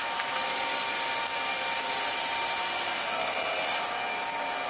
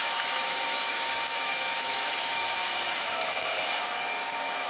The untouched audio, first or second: first